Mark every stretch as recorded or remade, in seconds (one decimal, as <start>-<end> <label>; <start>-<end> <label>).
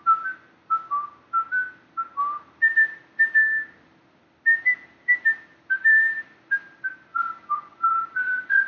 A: 0.0-7.1 recorded; 7.1-8.7 remade